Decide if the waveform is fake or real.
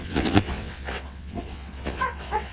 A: fake